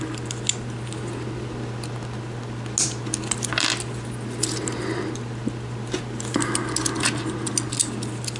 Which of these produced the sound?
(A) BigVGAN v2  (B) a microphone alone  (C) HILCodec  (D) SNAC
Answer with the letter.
B